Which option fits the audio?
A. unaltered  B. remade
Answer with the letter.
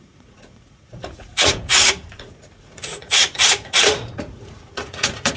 B